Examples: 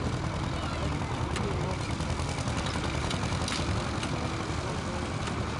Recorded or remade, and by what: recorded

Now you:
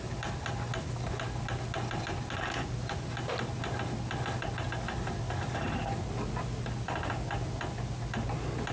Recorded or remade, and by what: recorded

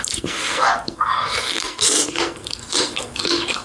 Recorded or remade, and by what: remade, codec, SNAC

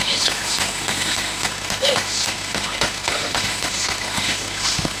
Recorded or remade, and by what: remade, autoencoder, DAC-VAE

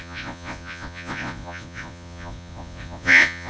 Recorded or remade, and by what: remade, vocoder, Vocos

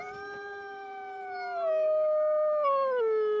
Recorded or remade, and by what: recorded